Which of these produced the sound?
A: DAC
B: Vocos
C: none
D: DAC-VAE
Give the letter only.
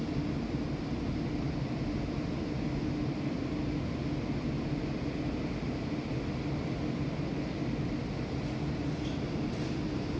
C